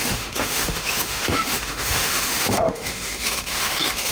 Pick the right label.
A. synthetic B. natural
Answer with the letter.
A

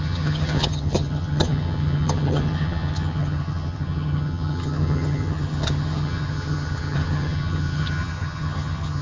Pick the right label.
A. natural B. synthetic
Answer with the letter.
B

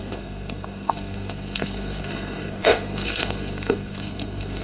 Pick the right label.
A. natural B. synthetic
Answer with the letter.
B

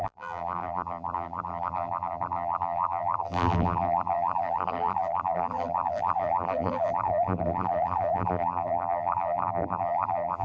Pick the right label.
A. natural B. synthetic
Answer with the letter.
B